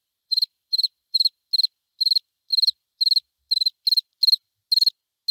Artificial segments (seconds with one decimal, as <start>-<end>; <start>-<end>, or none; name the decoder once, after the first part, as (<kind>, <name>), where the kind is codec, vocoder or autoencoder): 0.0-1.5 (vocoder, BigVGAN v2)